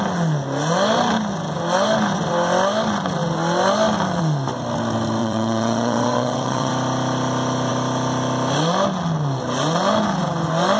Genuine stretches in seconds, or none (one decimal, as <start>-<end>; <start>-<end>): 0.0-5.2; 6.7-10.8